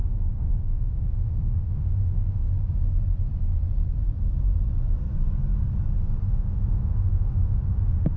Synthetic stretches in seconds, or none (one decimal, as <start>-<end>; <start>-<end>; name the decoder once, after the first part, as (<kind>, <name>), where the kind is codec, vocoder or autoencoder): 0.0-2.4 (autoencoder, DAC-VAE); 6.0-8.2